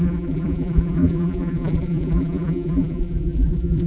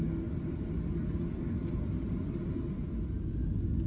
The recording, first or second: second